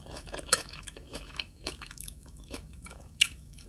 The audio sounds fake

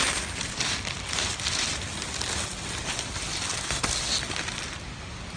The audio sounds real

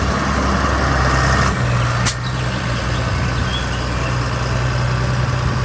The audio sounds real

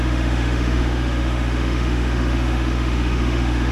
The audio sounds fake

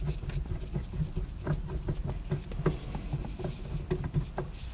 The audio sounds real